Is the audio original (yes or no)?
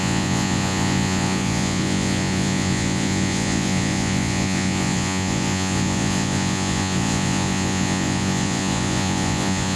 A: no